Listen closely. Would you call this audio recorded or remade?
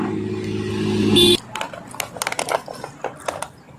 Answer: recorded